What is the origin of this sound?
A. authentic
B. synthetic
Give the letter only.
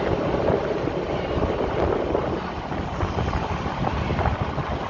A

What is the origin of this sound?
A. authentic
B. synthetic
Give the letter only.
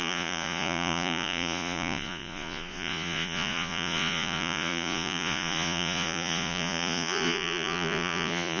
B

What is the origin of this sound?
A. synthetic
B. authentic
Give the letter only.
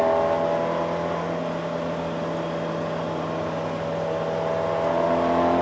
B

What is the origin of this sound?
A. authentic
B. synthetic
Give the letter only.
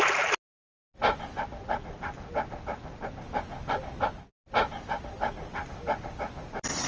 A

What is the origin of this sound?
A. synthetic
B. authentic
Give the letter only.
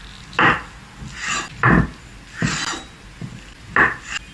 B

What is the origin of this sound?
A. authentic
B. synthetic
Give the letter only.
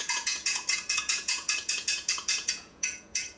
B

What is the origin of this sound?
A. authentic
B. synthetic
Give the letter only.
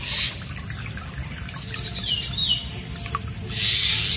A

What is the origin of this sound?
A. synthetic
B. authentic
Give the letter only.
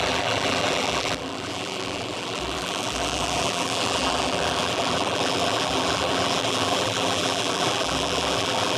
A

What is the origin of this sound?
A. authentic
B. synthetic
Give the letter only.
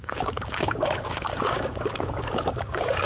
B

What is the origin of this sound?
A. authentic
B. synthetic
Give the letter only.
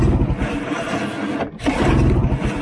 A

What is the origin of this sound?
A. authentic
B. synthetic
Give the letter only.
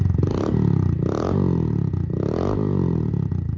A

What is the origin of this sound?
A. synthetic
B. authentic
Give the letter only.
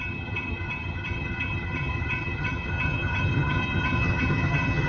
A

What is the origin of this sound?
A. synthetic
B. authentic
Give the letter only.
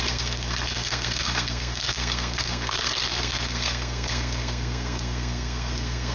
A